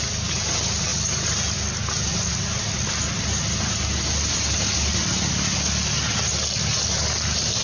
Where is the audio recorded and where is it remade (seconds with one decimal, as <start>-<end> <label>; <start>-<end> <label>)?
0.0-7.6 recorded